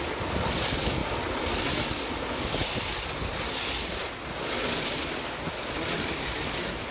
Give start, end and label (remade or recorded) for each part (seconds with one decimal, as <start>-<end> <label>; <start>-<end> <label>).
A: 0.0-6.9 recorded